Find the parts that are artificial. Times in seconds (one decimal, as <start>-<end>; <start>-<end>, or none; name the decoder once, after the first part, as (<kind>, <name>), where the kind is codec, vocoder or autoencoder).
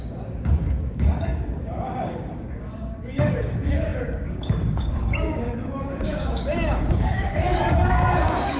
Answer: 0.0-8.6 (codec, DAC)